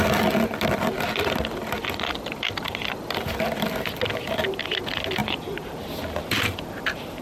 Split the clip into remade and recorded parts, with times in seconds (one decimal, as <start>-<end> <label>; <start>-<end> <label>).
0.0-7.2 recorded